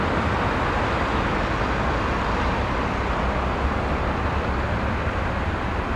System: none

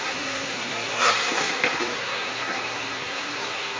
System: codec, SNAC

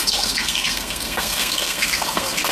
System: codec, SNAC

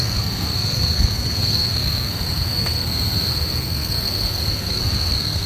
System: codec, SNAC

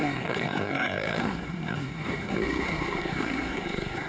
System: codec, SNAC